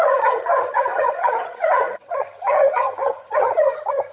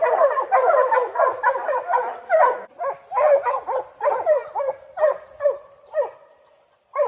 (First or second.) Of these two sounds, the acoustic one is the second